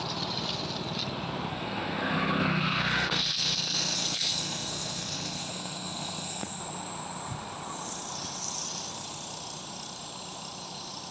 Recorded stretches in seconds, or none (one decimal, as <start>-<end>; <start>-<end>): 0.0-1.5; 6.6-11.1